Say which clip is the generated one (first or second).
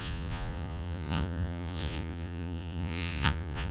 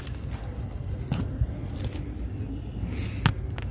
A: first